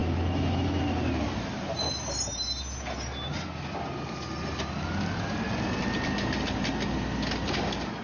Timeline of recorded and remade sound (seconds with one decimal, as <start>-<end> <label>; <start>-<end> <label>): 0.0-0.8 remade; 0.8-8.0 recorded